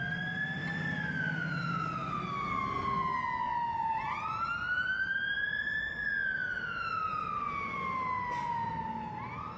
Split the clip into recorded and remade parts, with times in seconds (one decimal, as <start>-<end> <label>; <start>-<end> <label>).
0.0-9.6 recorded

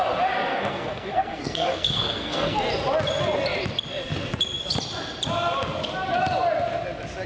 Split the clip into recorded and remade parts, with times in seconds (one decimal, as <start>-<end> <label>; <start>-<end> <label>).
0.0-0.5 recorded; 0.5-2.6 remade; 2.6-7.3 recorded

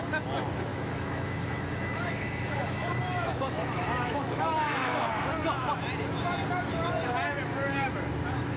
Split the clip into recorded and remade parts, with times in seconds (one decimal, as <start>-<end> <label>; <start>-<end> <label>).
0.0-0.7 recorded; 0.7-5.1 remade; 5.1-8.6 recorded

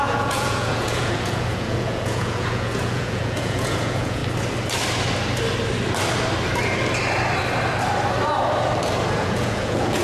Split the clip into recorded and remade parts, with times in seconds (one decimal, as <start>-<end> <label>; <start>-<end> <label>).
0.0-4.2 remade; 4.2-9.1 recorded; 9.1-10.0 remade